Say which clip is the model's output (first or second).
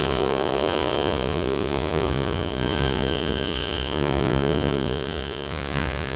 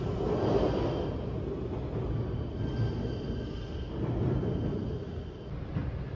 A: first